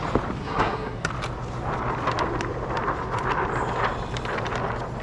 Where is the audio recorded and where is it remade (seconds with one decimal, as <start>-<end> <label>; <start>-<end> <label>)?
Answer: 0.0-0.4 recorded; 0.4-1.1 remade; 1.1-5.0 recorded